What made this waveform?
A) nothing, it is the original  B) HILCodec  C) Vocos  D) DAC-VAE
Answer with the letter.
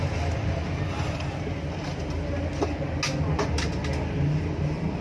A